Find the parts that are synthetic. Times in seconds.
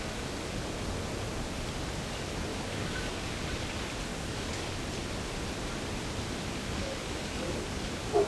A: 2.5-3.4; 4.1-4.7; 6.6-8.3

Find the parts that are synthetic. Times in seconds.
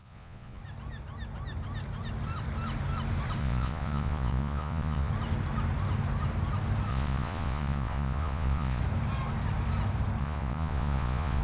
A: 0.0-0.6; 3.4-5.1; 6.9-8.8; 10.2-11.4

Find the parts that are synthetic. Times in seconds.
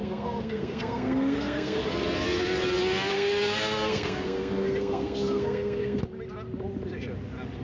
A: 0.0-1.8; 3.1-6.0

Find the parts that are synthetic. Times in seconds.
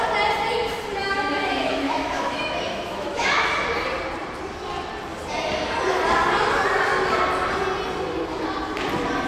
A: 1.0-3.5